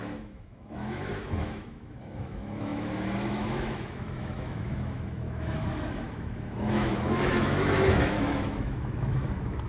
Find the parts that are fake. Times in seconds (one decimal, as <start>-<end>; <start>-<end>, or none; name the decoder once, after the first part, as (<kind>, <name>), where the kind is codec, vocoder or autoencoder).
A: 0.0-9.7 (autoencoder, DAC-VAE)